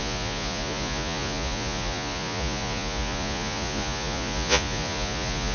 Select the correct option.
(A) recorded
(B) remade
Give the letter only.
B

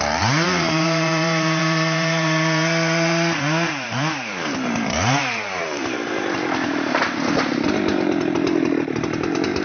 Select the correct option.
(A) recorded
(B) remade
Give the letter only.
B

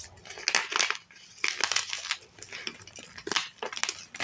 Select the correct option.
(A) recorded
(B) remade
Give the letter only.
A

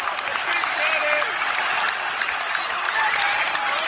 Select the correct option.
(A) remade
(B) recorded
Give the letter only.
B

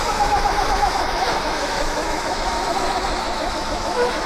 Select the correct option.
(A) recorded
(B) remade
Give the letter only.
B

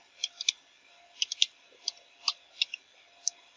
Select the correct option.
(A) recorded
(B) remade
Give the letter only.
A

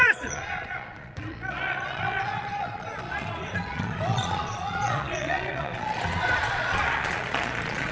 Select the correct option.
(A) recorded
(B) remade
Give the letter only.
B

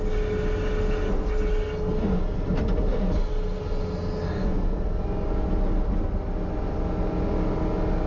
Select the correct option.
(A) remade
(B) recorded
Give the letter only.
B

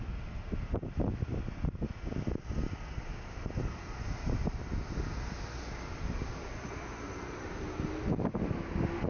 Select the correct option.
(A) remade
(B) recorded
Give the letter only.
B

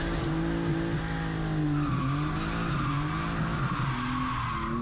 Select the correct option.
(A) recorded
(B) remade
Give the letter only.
A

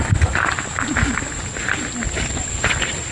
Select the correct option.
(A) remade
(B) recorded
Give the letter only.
B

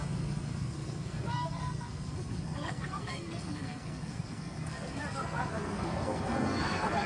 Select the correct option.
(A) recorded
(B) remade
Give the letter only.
B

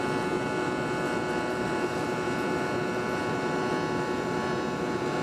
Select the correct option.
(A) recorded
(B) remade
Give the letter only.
A